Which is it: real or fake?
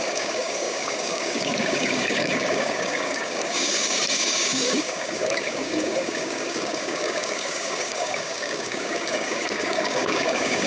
fake